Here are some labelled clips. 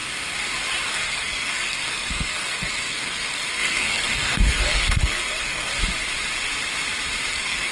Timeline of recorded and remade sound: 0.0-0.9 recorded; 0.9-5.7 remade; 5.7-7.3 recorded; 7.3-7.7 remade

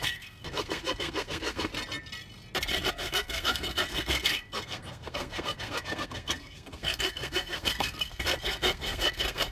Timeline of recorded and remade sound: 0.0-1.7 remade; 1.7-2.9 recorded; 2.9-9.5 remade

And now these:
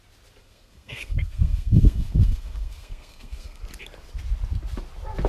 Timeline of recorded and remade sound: 0.0-0.4 recorded; 0.4-3.6 remade; 3.6-5.3 recorded

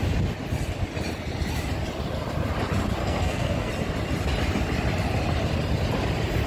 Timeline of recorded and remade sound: 0.0-3.0 recorded; 3.0-3.7 remade; 3.7-6.5 recorded

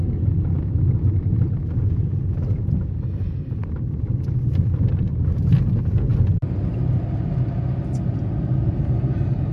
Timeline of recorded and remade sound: 0.0-9.5 recorded

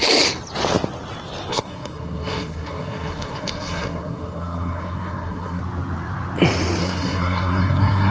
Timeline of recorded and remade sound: 0.0-1.5 recorded; 1.5-5.6 remade; 5.6-6.8 recorded; 6.8-8.1 remade

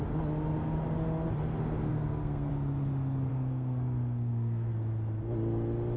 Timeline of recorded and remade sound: 0.0-1.9 recorded; 1.9-2.5 remade; 2.5-3.3 recorded; 3.3-4.7 remade; 4.7-6.0 recorded